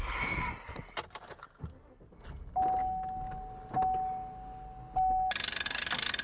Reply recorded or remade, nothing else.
recorded